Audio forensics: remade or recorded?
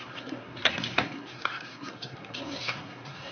remade